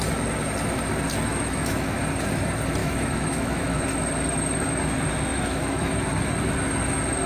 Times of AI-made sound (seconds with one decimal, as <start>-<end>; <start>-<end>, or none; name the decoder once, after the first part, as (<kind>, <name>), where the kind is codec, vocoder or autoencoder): 1.3-2.0 (autoencoder, DAC-VAE); 2.8-3.8; 5.3-5.9